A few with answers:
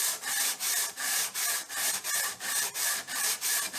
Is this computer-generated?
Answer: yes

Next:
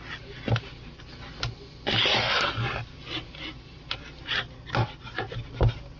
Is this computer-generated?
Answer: no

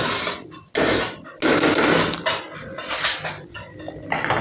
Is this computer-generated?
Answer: no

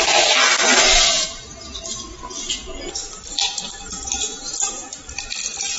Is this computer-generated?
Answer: no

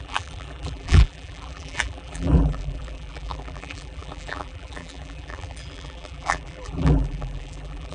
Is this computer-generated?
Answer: yes